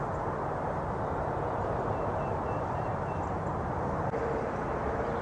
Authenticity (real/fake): fake